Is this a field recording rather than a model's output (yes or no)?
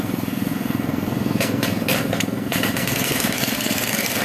no